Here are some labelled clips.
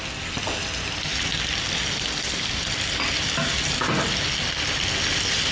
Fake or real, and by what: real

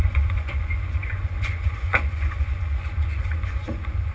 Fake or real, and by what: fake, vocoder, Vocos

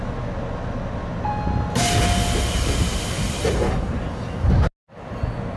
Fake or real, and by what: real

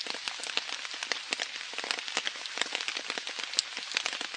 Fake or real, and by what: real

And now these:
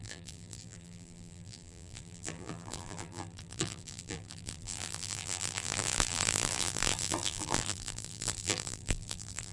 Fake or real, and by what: fake, vocoder, BigVGAN v2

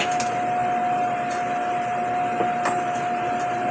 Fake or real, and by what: real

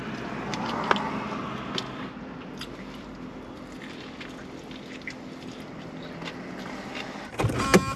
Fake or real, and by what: real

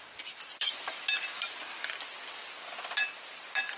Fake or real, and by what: real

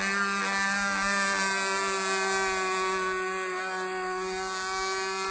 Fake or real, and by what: real